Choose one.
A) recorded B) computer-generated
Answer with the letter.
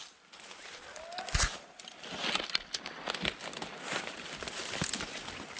A